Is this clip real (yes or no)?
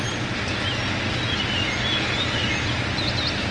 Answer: yes